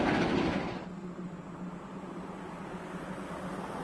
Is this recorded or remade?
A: recorded